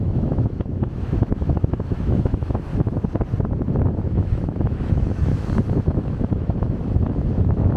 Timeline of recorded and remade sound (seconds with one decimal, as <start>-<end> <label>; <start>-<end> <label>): 0.0-2.7 remade; 2.7-4.0 recorded; 4.0-6.8 remade; 6.8-7.3 recorded; 7.3-7.8 remade